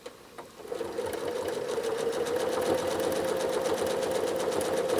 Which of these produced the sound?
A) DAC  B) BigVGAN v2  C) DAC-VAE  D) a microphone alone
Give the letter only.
D